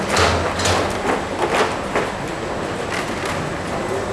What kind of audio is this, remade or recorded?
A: recorded